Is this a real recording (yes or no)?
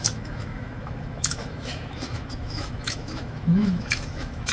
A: no